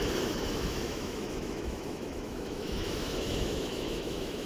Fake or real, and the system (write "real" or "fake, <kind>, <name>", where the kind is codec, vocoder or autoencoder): fake, autoencoder, DAC-VAE